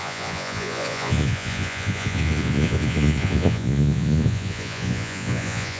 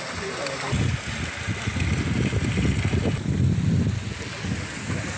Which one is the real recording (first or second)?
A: second